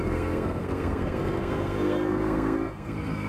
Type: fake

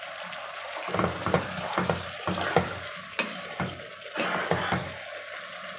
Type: real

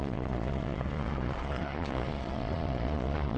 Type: fake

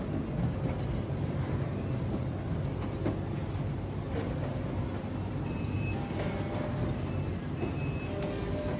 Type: real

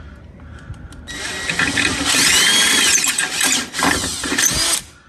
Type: real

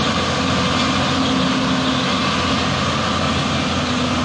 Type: real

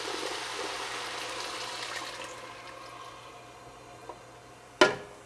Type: real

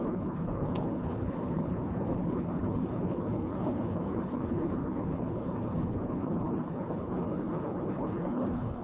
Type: fake